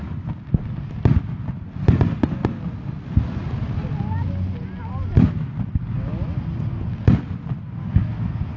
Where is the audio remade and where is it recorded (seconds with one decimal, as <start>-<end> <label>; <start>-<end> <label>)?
0.0-8.6 recorded